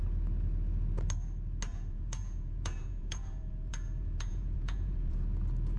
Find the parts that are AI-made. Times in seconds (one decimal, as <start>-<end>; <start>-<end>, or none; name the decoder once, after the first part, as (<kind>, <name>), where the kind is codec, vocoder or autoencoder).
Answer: 1.7-5.2 (vocoder, Vocos)